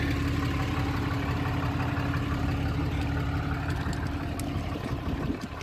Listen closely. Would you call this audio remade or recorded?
recorded